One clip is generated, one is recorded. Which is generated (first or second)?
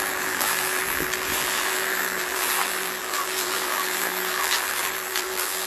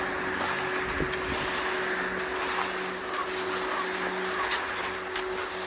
first